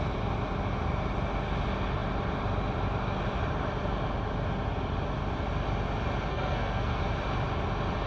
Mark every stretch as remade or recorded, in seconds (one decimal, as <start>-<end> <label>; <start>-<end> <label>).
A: 0.0-6.3 recorded; 6.3-7.0 remade; 7.0-8.1 recorded